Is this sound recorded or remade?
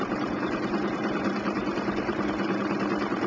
remade